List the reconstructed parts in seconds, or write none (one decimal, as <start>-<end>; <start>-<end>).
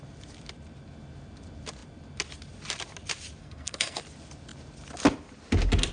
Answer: 3.4-4.0